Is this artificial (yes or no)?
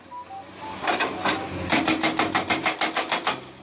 no